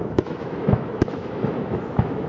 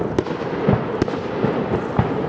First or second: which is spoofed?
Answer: first